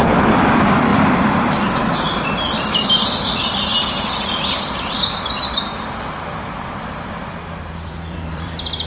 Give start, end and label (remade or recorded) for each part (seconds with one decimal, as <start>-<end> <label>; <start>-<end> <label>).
0.0-3.7 remade; 3.7-4.5 recorded; 4.5-8.9 remade